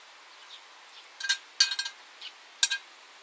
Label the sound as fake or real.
real